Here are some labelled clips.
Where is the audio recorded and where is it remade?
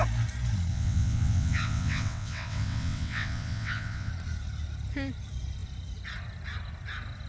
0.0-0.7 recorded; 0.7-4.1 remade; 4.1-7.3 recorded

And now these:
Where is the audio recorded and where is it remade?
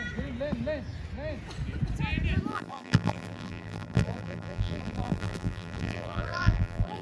0.0-2.5 recorded; 2.5-7.0 remade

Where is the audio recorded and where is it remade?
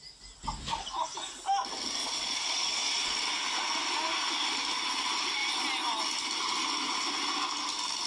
0.0-2.0 recorded; 2.0-3.2 remade; 3.2-8.1 recorded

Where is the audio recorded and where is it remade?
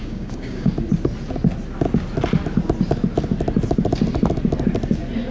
0.0-0.7 remade; 0.7-5.3 recorded